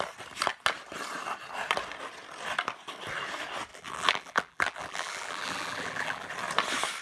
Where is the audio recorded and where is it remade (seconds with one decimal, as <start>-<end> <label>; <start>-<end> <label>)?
0.0-3.7 recorded; 3.7-6.3 remade; 6.3-7.0 recorded